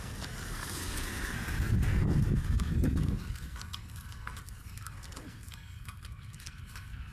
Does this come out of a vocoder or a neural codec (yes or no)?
yes